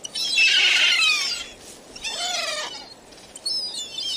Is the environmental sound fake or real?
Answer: real